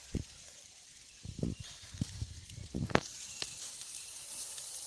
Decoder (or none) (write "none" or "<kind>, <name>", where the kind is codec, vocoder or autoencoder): vocoder, BigVGAN v2